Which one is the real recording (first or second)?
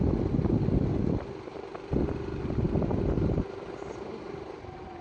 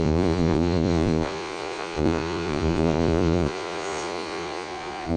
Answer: first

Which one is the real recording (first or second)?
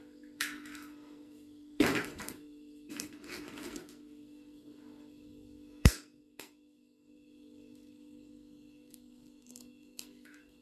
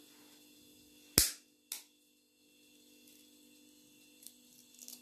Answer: second